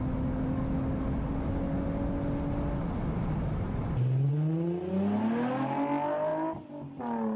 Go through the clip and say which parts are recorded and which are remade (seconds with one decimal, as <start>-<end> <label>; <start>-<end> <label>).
0.0-7.4 recorded